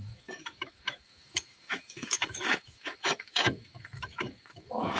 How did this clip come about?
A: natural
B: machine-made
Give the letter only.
B